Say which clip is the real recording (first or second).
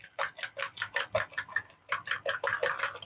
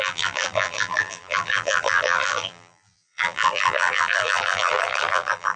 first